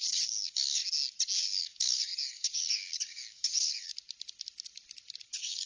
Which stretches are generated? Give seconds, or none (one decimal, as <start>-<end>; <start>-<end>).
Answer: 0.0-0.8; 1.4-3.9; 5.2-5.7